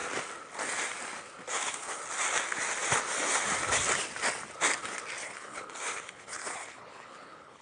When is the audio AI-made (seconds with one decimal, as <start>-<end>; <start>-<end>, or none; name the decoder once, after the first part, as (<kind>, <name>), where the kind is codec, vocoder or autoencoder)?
1.5-2.0 (codec, HILCodec); 5.2-7.6